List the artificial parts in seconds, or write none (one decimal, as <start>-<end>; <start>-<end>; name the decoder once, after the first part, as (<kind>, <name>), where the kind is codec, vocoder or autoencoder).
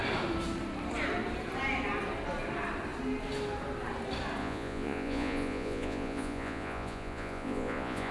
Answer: 4.4-8.1 (vocoder, Vocos)